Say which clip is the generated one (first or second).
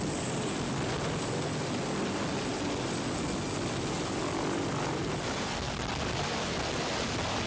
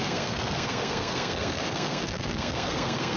second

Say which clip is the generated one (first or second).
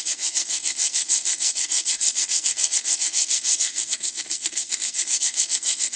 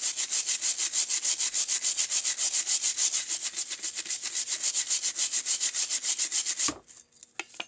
first